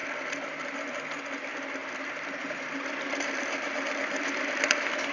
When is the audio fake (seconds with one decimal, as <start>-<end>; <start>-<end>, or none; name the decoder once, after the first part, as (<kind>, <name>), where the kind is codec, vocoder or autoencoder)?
0.0-0.7 (vocoder, BigVGAN v2); 1.8-5.1